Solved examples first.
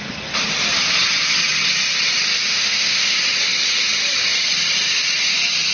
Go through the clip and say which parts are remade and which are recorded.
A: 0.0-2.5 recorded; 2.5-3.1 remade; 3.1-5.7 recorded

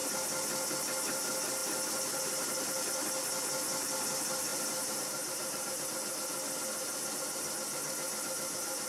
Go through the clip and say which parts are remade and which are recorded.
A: 0.0-4.5 recorded; 4.5-5.8 remade; 5.8-8.9 recorded

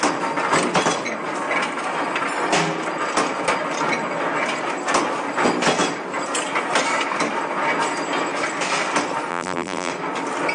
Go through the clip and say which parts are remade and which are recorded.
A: 0.0-9.3 recorded; 9.3-9.9 remade; 9.9-10.5 recorded

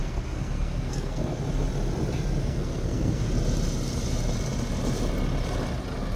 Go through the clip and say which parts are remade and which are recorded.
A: 0.0-1.4 remade; 1.4-2.4 recorded; 2.4-3.3 remade; 3.3-6.2 recorded

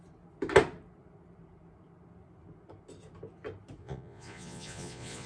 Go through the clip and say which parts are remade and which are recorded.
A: 0.0-3.8 recorded; 3.8-5.3 remade